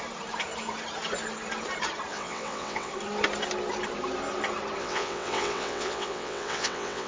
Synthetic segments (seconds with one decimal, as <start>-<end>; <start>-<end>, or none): 2.1-2.9; 4.8-7.1